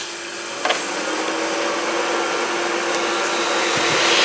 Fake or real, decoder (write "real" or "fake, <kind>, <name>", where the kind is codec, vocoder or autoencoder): real